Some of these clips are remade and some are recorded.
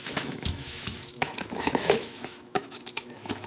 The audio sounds remade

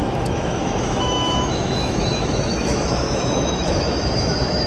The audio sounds remade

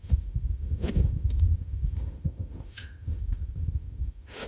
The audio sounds remade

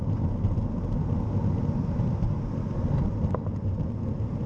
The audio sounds recorded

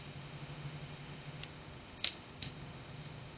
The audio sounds remade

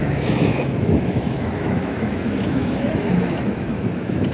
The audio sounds remade